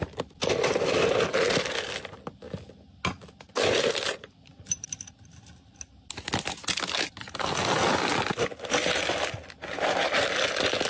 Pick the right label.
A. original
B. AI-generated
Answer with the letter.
A